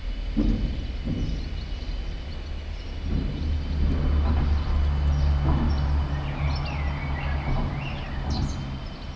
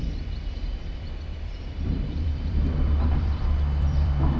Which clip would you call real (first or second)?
first